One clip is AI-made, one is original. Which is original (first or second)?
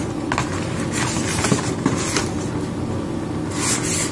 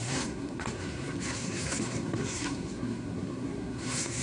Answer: first